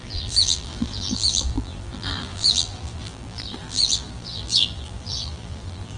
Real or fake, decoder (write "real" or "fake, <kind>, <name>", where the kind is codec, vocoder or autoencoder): fake, vocoder, BigVGAN v2